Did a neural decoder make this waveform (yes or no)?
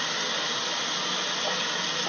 no